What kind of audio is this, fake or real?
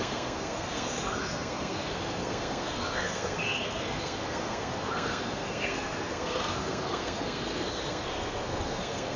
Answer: fake